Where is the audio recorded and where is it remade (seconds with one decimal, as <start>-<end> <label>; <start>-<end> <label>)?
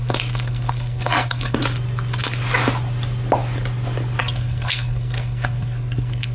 0.0-1.6 remade; 1.6-4.2 recorded; 4.2-6.3 remade